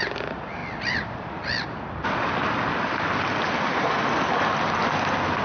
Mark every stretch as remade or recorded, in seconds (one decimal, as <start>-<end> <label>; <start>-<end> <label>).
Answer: 0.0-5.4 recorded